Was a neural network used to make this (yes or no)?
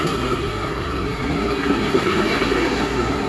yes